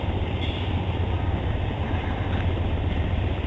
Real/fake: fake